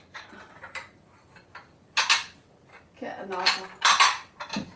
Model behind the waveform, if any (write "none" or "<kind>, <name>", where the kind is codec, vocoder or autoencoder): none